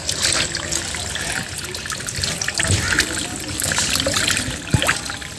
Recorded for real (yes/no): yes